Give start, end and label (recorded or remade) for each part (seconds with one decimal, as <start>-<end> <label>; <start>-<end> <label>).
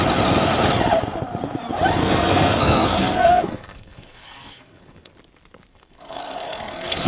0.0-2.0 recorded; 2.0-5.1 remade; 5.1-5.7 recorded; 5.7-7.1 remade